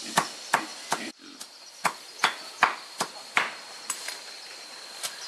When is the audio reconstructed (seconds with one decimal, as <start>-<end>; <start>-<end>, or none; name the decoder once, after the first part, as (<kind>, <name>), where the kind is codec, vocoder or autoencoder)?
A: none